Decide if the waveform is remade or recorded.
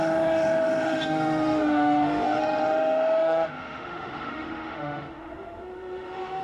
remade